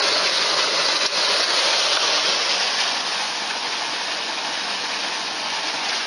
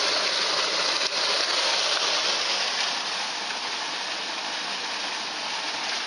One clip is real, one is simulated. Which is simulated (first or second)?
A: first